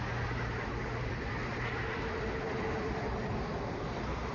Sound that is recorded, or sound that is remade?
recorded